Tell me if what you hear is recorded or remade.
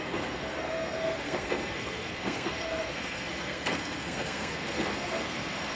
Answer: remade